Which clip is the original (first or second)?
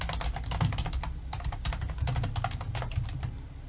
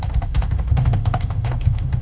first